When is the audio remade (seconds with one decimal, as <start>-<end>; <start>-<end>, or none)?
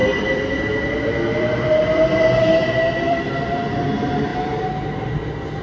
0.0-3.4